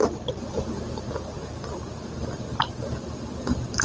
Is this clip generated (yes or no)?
no